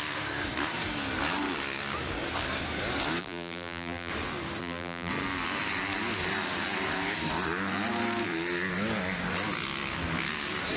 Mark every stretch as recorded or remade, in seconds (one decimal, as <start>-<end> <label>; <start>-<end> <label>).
0.0-3.2 recorded; 3.2-4.1 remade; 4.1-4.6 recorded; 4.6-5.1 remade; 5.1-10.8 recorded